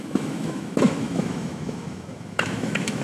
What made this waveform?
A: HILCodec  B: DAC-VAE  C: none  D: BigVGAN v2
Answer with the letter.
B